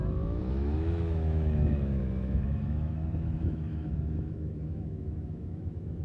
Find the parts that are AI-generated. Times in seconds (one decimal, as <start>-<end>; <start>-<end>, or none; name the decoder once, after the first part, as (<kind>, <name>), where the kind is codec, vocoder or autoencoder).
0.0-6.0 (autoencoder, DAC-VAE)

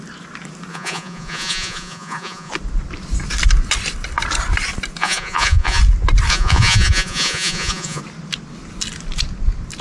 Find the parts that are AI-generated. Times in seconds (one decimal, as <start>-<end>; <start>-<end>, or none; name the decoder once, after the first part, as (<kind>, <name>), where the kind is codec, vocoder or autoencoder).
0.7-2.5 (vocoder, Vocos); 5.0-5.8; 6.3-8.0

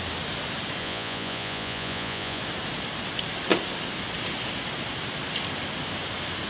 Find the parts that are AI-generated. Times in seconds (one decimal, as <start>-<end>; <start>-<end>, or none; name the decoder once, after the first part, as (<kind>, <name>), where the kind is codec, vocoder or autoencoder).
0.8-2.4 (vocoder, Vocos)

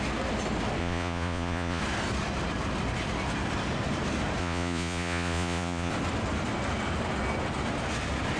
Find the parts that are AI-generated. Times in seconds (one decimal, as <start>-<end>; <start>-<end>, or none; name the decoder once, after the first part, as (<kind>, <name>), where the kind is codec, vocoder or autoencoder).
0.8-1.8 (vocoder, Vocos); 4.4-5.9

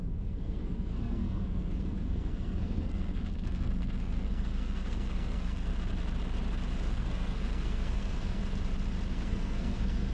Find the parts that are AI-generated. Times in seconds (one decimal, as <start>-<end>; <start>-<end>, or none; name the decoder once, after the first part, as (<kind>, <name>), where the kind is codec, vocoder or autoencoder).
0.0-5.7 (codec, SNAC); 6.9-8.4; 9.1-10.1

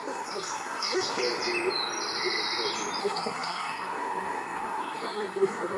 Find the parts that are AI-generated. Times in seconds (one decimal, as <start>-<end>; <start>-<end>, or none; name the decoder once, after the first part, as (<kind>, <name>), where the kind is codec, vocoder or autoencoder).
0.0-1.2 (codec, SNAC); 3.0-5.8